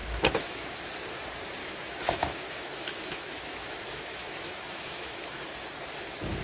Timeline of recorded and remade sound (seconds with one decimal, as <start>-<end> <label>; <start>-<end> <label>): 0.0-0.8 remade; 0.8-1.6 recorded; 1.6-5.4 remade; 5.4-6.4 recorded